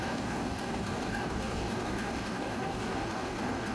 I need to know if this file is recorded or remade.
remade